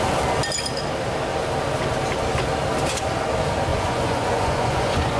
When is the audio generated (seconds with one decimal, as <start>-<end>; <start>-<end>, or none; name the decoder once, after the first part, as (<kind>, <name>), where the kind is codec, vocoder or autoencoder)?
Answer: 3.7-5.2 (vocoder, Vocos)